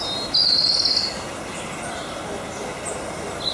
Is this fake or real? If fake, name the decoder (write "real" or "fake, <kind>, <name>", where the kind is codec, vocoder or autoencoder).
real